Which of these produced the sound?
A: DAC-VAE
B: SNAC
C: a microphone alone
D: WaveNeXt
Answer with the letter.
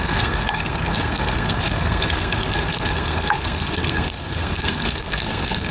B